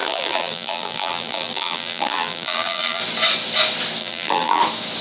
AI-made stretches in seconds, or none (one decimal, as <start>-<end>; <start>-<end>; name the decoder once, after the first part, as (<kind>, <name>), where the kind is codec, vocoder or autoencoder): 0.0-3.0 (vocoder, BigVGAN v2); 4.0-4.6